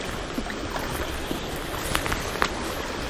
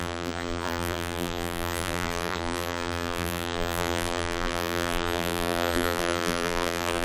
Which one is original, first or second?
first